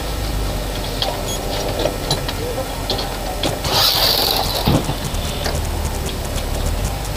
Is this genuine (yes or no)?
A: yes